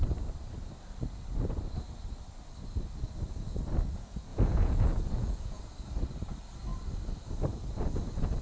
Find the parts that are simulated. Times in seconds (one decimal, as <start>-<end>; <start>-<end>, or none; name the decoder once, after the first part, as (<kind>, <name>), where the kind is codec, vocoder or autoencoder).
4.3-5.6 (vocoder, Vocos)